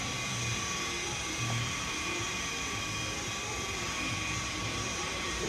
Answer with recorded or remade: remade